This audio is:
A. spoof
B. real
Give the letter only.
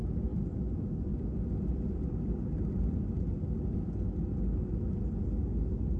B